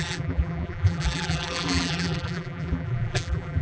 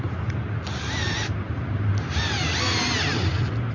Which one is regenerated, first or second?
first